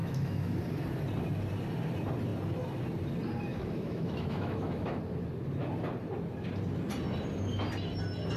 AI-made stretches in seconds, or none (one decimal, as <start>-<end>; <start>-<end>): 0.0-0.6; 3.5-5.0